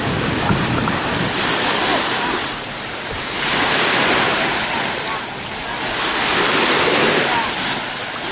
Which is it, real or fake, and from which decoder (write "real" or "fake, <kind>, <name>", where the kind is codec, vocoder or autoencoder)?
real